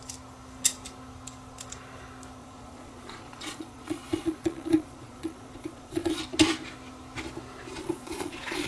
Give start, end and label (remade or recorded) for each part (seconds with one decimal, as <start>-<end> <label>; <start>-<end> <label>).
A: 0.0-2.4 recorded; 2.4-6.2 remade; 6.2-7.8 recorded; 7.8-8.7 remade